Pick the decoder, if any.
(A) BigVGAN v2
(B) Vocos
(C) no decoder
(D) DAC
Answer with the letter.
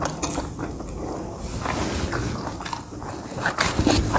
C